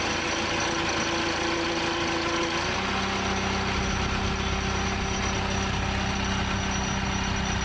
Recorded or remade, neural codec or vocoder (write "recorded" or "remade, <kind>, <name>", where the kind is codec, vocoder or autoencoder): recorded